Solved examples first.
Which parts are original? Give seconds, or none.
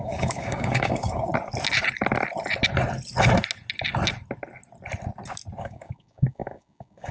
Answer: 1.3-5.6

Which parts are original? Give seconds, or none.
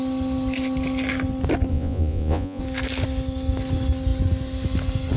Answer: 0.0-1.7; 2.6-5.2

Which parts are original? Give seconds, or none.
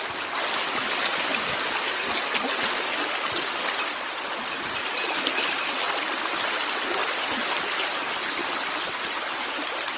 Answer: 0.0-7.0; 7.6-8.4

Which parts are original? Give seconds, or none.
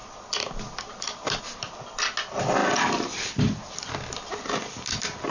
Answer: 0.0-5.3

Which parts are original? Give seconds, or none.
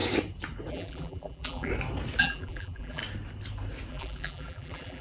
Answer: 0.0-0.7; 1.7-2.2; 3.0-3.9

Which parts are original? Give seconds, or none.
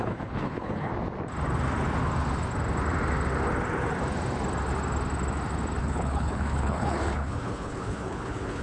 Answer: 0.9-5.8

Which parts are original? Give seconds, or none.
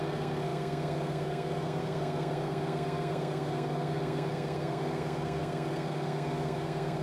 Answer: none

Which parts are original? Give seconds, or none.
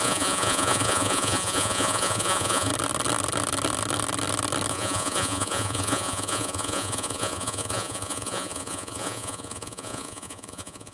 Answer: 2.7-4.7